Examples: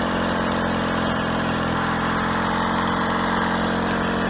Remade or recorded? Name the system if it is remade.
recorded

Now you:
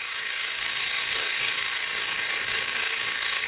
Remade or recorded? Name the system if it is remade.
remade, codec, DAC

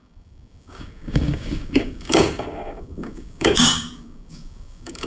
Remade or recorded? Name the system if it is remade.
remade, codec, DAC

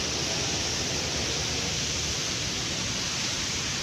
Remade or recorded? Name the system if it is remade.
recorded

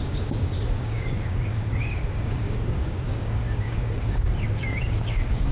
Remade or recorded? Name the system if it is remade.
remade, codec, DAC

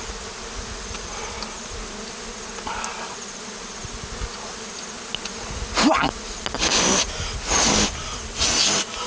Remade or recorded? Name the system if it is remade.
recorded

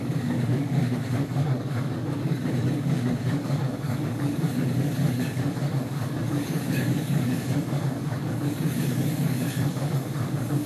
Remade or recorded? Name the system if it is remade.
remade, codec, DAC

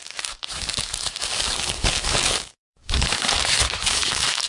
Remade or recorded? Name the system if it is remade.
remade, codec, DAC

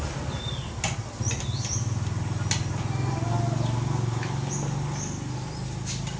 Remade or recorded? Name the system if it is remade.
recorded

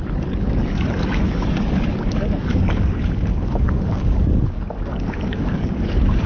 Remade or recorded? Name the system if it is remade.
remade, codec, DAC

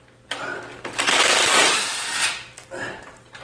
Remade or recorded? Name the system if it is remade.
recorded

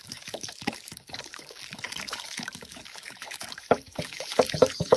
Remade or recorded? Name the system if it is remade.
remade, codec, DAC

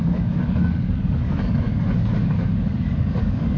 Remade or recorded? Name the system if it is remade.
remade, codec, DAC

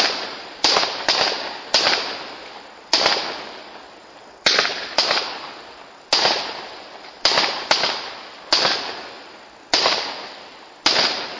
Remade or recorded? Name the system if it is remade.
recorded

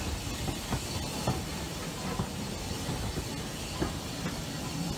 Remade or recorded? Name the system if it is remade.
recorded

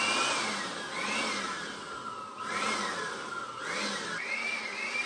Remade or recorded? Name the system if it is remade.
recorded